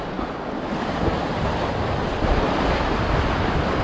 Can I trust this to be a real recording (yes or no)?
yes